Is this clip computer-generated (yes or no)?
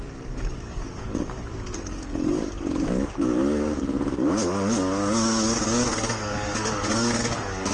yes